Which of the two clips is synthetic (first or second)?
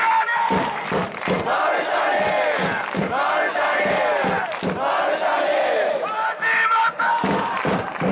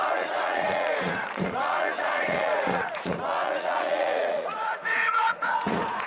second